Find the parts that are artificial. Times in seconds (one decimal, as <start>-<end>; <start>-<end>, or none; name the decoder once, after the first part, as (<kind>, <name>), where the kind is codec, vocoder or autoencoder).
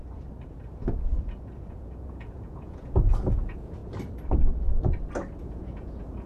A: 0.5-3.8 (vocoder, Vocos); 5.4-6.3